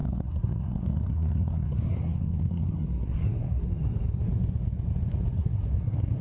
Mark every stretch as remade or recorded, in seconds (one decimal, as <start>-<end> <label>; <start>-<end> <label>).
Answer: 0.0-3.7 remade; 3.7-5.4 recorded; 5.4-6.2 remade